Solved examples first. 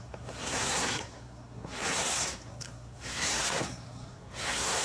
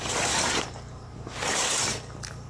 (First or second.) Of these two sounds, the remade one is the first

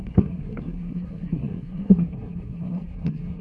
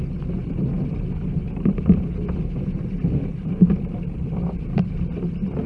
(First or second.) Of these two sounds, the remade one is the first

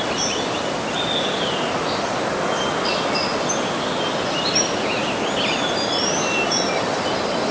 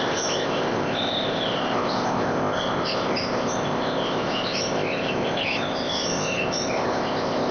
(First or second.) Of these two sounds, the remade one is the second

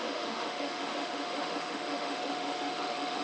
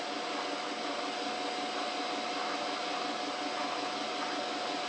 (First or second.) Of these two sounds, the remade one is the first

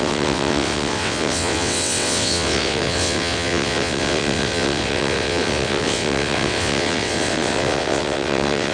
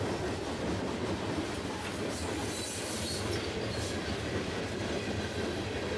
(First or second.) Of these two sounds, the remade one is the first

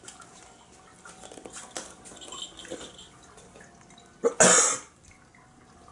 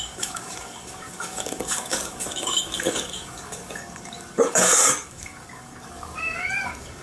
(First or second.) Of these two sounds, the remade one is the second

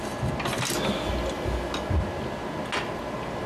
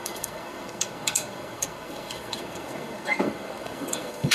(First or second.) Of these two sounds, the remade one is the second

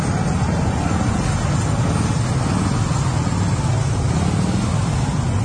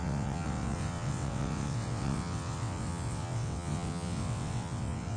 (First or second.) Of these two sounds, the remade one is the second